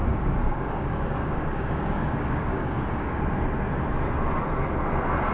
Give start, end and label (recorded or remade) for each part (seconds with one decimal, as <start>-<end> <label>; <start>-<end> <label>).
0.0-3.2 remade; 3.2-5.3 recorded